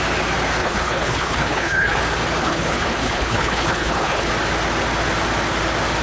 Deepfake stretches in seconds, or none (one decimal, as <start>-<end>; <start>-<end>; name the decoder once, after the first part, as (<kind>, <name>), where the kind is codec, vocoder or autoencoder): 0.6-2.0 (codec, HILCodec); 2.4-4.3